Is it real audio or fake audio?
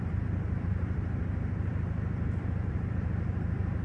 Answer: fake